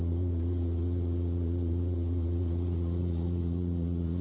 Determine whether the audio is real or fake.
fake